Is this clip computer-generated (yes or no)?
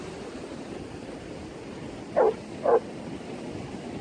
no